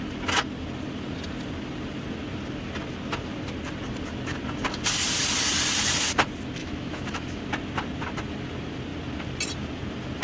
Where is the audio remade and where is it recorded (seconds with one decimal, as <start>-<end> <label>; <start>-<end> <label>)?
0.0-6.6 recorded; 6.6-7.4 remade; 7.4-10.2 recorded